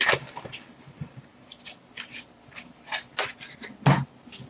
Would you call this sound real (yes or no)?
yes